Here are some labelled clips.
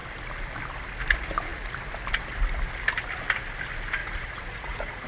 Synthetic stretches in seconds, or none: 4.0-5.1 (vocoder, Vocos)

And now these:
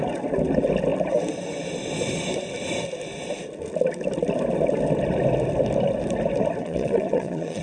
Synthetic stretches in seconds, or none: 6.6-7.6 (vocoder, Vocos)

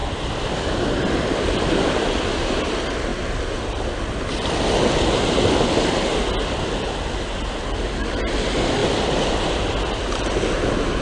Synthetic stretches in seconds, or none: none

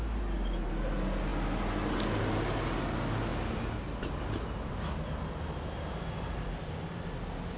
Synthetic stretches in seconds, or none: none

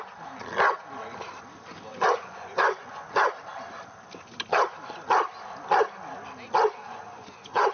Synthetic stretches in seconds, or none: 1.9-3.0 (vocoder, Vocos); 6.8-7.7

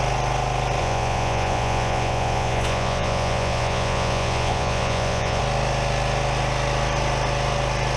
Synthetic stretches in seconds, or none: 0.8-5.4 (vocoder, Vocos)

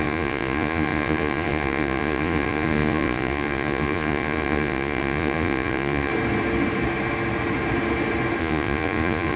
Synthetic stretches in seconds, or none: 0.0-6.1 (vocoder, Vocos); 8.4-9.4

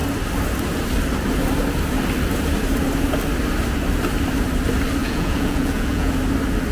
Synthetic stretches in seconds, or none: 5.0-6.1 (vocoder, Vocos)